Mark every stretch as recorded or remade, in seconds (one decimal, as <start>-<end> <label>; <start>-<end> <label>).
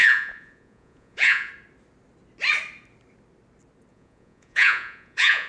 0.0-1.5 remade; 1.5-3.9 recorded; 3.9-5.5 remade